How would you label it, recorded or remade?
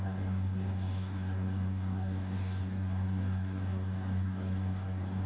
remade